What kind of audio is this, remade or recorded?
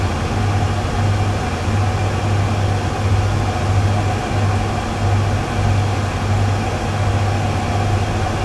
recorded